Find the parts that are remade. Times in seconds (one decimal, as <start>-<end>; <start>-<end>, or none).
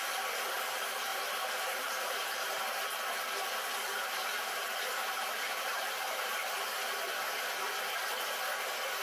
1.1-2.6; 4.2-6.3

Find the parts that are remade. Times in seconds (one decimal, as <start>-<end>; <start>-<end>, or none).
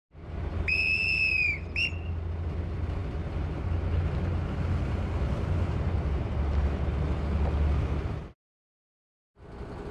0.7-1.3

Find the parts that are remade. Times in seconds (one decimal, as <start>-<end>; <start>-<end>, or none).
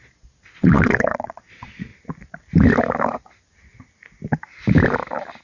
0.0-1.9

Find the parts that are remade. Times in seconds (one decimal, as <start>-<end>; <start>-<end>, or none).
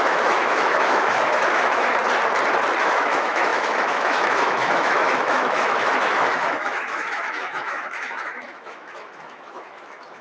0.0-2.0; 2.8-10.2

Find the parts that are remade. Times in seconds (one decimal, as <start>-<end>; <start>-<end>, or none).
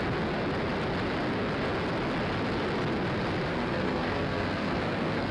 3.5-5.3